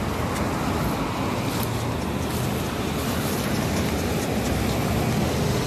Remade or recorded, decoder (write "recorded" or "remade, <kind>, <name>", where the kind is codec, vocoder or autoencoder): recorded